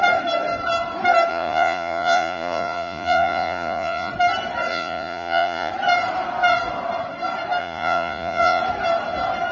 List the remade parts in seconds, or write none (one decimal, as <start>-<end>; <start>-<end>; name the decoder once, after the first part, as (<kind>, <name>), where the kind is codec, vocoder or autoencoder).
1.3-4.1 (vocoder, Vocos); 4.7-5.7; 7.6-8.6